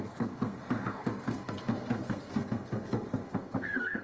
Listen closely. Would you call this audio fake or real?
fake